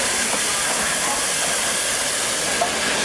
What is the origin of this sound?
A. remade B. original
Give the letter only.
B